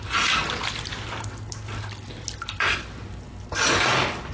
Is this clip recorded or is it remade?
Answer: recorded